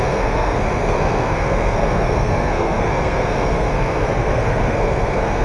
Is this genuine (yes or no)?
no